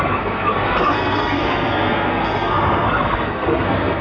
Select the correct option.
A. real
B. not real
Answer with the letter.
B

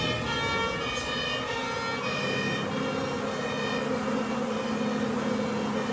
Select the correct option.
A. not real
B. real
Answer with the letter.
B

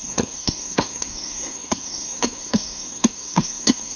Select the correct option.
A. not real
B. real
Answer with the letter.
A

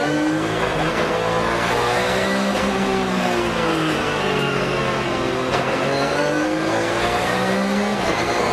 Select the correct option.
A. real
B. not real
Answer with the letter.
B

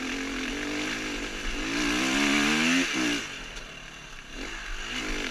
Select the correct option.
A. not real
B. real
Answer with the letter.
B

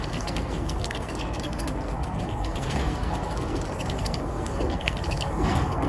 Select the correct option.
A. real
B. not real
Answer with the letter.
B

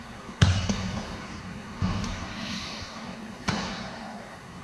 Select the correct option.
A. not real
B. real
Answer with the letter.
A